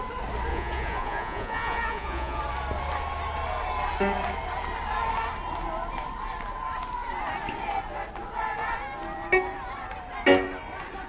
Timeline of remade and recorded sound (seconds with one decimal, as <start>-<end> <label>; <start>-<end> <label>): 0.0-0.5 recorded; 0.5-2.4 remade; 2.4-11.1 recorded